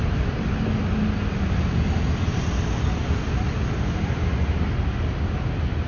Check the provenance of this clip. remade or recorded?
recorded